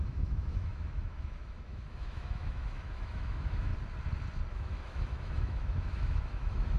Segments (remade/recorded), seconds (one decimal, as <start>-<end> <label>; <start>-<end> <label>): 0.0-3.7 remade; 3.7-4.5 recorded; 4.5-6.8 remade